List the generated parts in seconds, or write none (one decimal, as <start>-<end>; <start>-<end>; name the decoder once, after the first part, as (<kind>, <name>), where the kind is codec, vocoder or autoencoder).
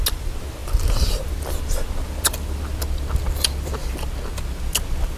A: none